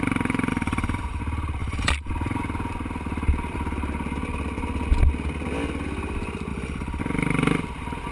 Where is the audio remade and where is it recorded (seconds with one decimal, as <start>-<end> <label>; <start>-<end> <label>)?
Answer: 0.0-0.5 recorded; 0.5-1.2 remade; 1.2-1.6 recorded; 1.6-2.1 remade; 2.1-6.5 recorded; 6.5-7.0 remade; 7.0-8.1 recorded